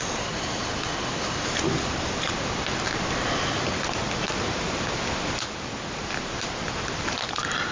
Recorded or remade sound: recorded